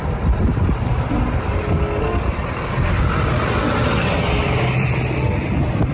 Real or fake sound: fake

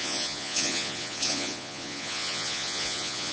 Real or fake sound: fake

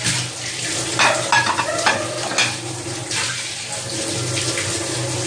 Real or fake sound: real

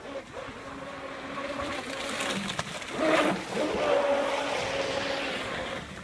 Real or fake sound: real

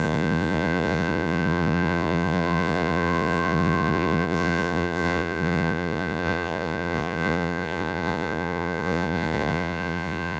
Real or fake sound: fake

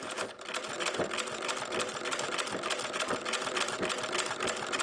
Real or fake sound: real